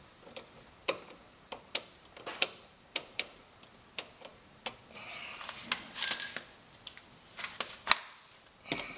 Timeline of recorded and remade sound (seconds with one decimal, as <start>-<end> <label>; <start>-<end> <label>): 0.0-0.8 recorded; 0.8-3.4 remade; 3.4-9.0 recorded

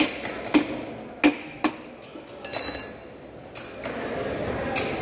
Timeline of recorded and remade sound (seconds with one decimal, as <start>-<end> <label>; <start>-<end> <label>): 0.0-5.0 recorded

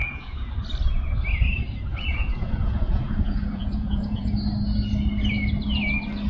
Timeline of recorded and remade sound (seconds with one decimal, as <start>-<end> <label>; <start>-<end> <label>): 0.0-0.5 remade; 0.5-1.9 recorded; 1.9-4.2 remade; 4.2-6.3 recorded

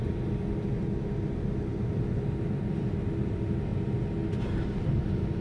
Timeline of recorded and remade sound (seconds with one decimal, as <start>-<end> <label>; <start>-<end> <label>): 0.0-5.4 recorded

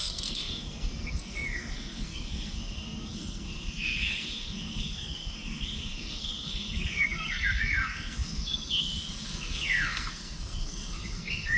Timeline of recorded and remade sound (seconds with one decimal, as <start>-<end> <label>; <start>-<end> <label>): 0.0-11.6 remade

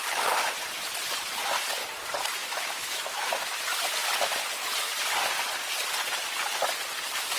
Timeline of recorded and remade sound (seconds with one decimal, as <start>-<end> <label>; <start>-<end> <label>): 0.0-2.4 recorded; 2.4-3.3 remade; 3.3-7.4 recorded

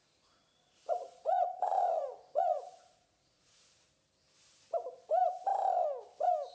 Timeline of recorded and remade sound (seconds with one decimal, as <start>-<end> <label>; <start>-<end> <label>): 0.0-3.9 remade; 3.9-6.5 recorded